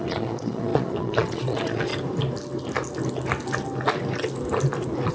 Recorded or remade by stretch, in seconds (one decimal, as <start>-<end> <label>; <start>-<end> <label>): 0.0-1.9 remade; 1.9-5.1 recorded